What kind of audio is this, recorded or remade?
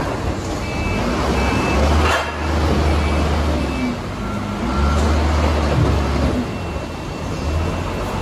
recorded